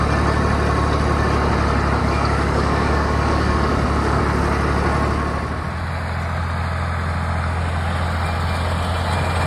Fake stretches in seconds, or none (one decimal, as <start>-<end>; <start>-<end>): 2.0-4.2